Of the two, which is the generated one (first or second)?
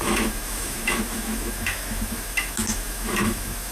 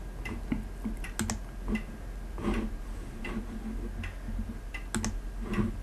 first